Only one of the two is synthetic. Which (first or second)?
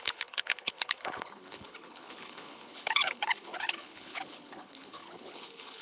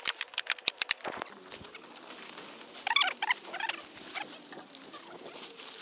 first